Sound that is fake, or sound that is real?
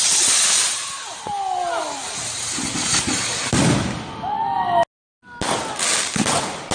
real